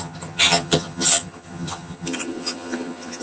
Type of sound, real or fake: fake